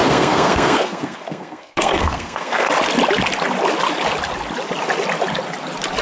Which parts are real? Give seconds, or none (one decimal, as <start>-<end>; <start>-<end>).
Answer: 2.7-6.0